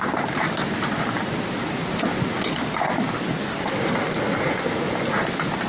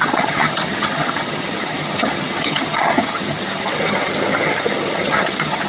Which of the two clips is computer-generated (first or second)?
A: second